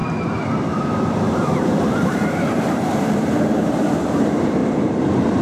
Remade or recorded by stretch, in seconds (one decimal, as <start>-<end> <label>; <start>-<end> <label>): 0.0-1.1 recorded; 1.1-4.6 remade; 4.6-5.4 recorded